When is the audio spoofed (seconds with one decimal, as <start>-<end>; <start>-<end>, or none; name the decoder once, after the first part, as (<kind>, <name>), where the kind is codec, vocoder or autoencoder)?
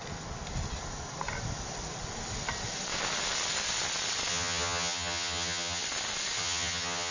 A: 4.3-5.8 (vocoder, HiFi-GAN); 6.4-7.1